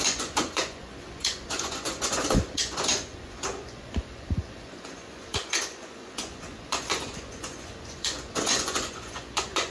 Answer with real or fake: fake